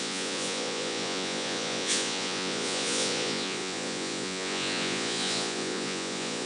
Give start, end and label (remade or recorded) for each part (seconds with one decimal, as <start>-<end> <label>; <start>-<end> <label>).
0.0-6.5 remade